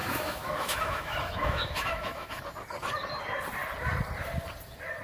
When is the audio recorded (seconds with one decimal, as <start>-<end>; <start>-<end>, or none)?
2.4-5.0

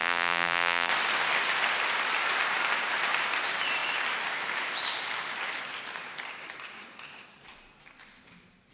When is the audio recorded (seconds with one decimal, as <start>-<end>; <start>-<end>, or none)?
0.9-8.7

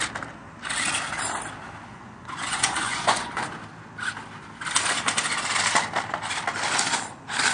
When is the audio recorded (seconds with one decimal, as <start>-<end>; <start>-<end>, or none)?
0.0-1.9; 3.5-7.5

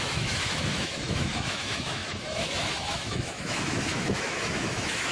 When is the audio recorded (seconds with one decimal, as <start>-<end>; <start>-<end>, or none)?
none

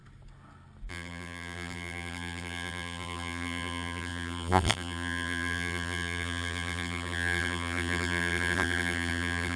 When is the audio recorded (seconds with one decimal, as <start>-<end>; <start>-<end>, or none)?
0.0-0.9

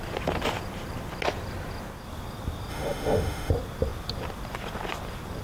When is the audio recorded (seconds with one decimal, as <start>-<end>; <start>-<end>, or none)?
0.0-2.7; 3.5-5.4

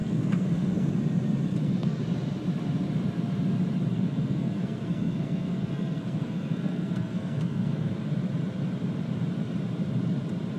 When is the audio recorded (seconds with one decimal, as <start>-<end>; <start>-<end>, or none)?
0.9-1.5; 2.0-3.9; 7.9-10.6